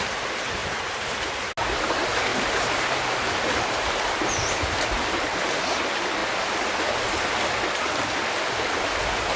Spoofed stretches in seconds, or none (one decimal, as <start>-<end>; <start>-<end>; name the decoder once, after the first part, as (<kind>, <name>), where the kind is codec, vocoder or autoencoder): 0.6-1.1 (vocoder, BigVGAN v2); 2.3-5.1